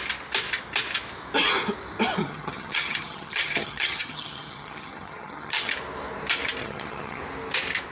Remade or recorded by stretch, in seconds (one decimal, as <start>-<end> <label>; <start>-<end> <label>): 0.0-2.2 recorded; 2.2-5.7 remade; 5.7-6.6 recorded; 6.6-7.2 remade; 7.2-7.9 recorded